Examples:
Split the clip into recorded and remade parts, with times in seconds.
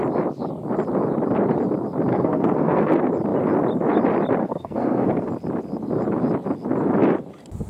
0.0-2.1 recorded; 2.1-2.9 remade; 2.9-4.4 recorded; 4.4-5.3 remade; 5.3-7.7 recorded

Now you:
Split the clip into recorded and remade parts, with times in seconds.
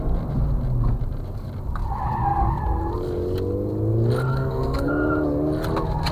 0.0-4.3 recorded; 4.3-4.9 remade; 4.9-6.1 recorded